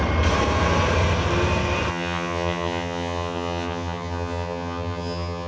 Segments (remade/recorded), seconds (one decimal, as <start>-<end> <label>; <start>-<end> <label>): 0.0-1.9 recorded; 1.9-5.5 remade